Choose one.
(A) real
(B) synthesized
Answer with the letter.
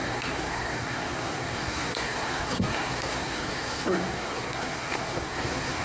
B